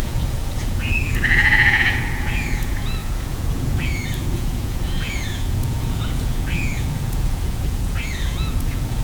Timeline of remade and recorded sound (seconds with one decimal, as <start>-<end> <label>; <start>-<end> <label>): 0.0-9.0 remade